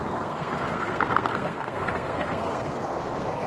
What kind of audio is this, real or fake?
fake